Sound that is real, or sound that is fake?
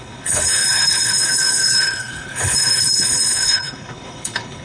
fake